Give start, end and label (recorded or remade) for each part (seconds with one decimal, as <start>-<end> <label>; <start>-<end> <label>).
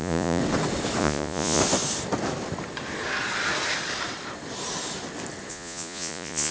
0.0-0.4 remade; 0.4-1.0 recorded; 1.0-1.6 remade; 1.6-5.5 recorded; 5.5-6.5 remade